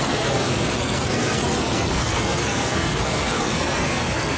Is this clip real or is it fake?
fake